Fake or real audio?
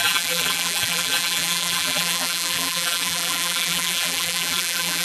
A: fake